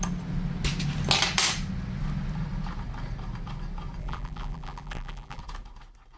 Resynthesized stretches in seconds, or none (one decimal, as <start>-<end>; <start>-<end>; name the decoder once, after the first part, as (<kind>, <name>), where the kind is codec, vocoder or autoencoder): 4.0-5.4 (vocoder, BigVGAN v2)